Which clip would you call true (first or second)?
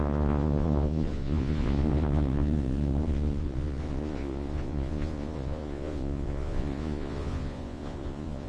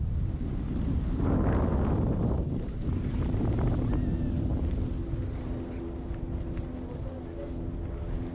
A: second